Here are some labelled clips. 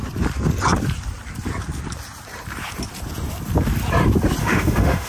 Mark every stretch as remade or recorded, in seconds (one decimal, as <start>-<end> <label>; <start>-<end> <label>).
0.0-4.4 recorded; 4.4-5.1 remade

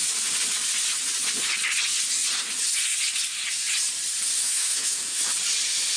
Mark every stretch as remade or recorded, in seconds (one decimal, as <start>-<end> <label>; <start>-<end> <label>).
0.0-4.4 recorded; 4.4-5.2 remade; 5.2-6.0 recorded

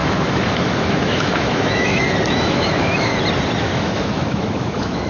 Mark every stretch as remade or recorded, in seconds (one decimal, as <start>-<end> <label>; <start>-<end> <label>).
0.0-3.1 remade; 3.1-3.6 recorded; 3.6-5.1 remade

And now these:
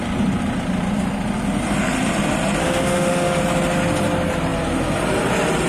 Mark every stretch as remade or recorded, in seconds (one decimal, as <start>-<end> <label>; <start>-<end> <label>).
0.0-2.6 recorded; 2.6-3.4 remade; 3.4-5.7 recorded

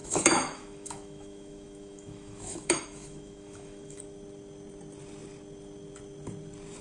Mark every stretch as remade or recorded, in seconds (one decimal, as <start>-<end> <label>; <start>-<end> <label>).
0.0-4.0 remade; 4.0-6.8 recorded

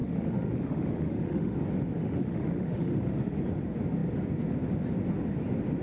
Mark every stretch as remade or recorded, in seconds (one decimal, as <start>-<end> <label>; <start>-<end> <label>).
0.0-1.6 remade; 1.6-2.0 recorded; 2.0-3.4 remade; 3.4-5.8 recorded

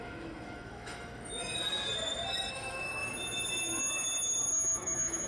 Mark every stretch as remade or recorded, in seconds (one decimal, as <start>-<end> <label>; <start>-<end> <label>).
0.0-1.4 remade; 1.4-2.5 recorded; 2.5-3.0 remade; 3.0-4.5 recorded; 4.5-5.3 remade

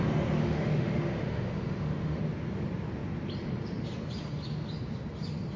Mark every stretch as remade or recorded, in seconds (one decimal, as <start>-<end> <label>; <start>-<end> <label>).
0.0-0.4 recorded; 0.4-2.2 remade; 2.2-5.6 recorded